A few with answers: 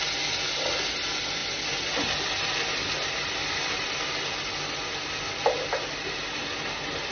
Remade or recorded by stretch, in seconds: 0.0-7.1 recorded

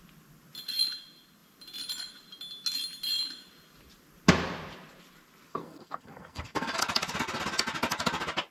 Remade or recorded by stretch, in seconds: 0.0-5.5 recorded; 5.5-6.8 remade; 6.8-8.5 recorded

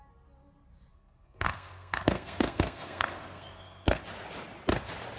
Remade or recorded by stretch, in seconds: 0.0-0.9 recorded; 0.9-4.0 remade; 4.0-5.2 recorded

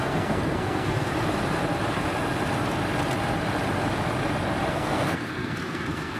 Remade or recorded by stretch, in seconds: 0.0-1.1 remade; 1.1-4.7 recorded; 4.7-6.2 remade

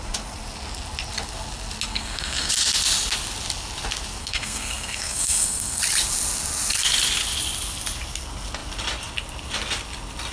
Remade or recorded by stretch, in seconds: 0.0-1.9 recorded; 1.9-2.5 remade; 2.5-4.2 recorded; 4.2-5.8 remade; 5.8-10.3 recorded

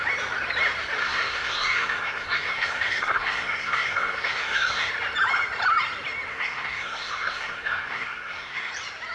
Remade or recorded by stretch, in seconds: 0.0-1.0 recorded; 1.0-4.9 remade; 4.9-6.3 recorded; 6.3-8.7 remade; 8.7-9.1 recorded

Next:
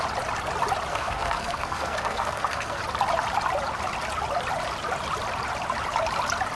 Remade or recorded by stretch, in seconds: 0.0-0.9 recorded; 0.9-2.8 remade; 2.8-6.5 recorded

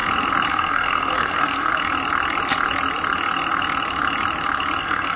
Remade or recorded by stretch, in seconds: 0.0-0.5 recorded; 0.5-1.7 remade; 1.7-4.8 recorded; 4.8-5.2 remade